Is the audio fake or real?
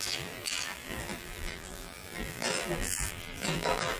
fake